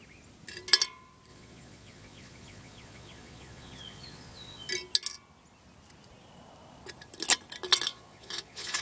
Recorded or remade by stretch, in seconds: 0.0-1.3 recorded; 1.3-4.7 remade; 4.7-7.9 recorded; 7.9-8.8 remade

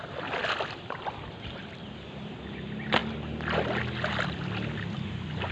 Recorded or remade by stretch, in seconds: 0.0-5.5 recorded

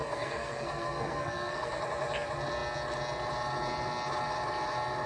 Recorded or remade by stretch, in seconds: 0.0-1.8 remade; 1.8-5.1 recorded

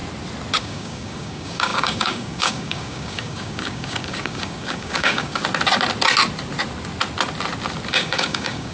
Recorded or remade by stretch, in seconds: 0.0-0.6 recorded; 0.6-5.4 remade; 5.4-7.9 recorded; 7.9-8.7 remade

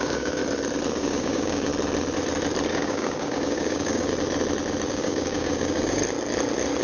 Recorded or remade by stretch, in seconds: 0.0-0.4 remade; 0.4-1.0 recorded; 1.0-1.7 remade; 1.7-2.7 recorded; 2.7-4.1 remade; 4.1-4.9 recorded; 4.9-6.0 remade; 6.0-6.8 recorded

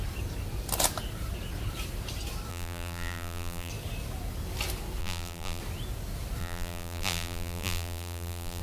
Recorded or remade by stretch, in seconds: 0.0-2.5 recorded; 2.5-3.7 remade; 3.7-5.0 recorded; 5.0-5.6 remade; 5.6-6.4 recorded; 6.4-8.6 remade

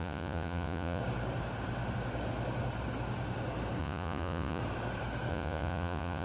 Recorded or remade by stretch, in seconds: 0.0-1.0 remade; 1.0-3.8 recorded; 3.8-4.6 remade; 4.6-5.3 recorded; 5.3-6.2 remade